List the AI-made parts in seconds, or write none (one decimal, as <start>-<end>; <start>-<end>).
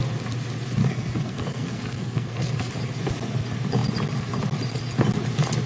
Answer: 0.8-2.7